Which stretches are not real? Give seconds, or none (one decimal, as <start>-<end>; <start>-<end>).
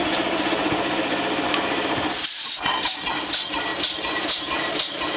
none